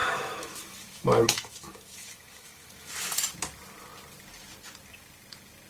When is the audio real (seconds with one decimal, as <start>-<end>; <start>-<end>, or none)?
2.9-5.7